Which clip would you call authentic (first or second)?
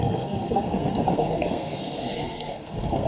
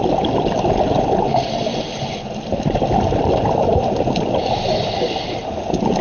second